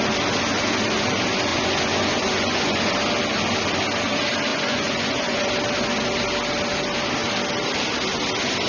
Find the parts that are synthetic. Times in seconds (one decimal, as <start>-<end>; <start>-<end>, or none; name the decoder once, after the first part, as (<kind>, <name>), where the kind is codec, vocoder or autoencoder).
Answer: 1.5-2.9 (vocoder, Vocos); 4.5-5.5